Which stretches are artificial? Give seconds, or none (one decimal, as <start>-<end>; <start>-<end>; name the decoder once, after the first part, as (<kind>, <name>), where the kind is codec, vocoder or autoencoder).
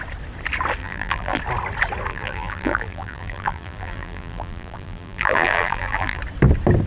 0.8-1.4 (vocoder, BigVGAN v2); 2.1-6.2